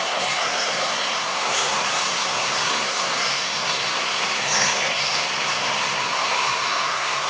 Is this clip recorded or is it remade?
remade